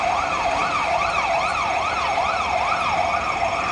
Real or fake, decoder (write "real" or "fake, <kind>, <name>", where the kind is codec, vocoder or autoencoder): real